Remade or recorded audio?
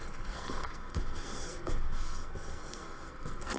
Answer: remade